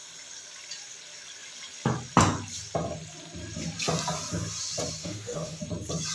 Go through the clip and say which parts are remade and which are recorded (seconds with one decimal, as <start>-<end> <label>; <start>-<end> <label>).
0.0-5.0 recorded; 5.0-5.6 remade; 5.6-6.1 recorded